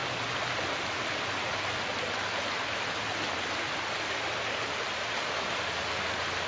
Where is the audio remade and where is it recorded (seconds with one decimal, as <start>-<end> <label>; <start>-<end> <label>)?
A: 0.0-6.5 recorded